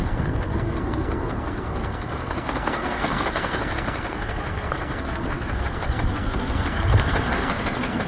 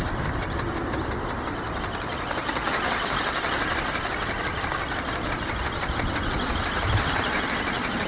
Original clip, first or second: second